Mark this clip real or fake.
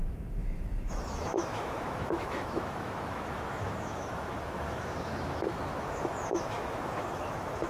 fake